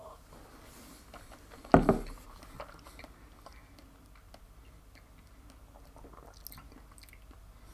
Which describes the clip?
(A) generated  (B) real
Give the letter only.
B